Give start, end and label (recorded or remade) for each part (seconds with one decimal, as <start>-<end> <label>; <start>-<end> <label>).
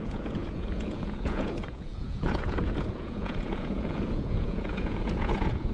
0.0-5.7 remade